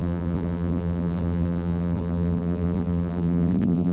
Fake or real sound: fake